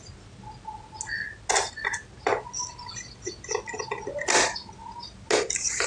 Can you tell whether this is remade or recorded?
recorded